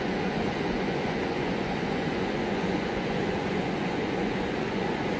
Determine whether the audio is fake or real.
fake